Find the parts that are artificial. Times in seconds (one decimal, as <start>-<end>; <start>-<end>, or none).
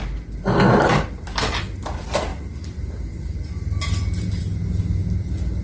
none